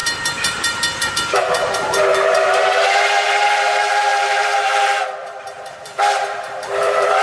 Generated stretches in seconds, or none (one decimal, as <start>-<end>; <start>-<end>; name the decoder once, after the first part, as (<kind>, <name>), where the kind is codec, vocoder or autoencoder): 0.0-7.2 (vocoder, BigVGAN v2)